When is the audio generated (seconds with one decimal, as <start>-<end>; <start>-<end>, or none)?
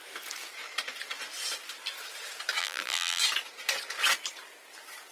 2.6-3.2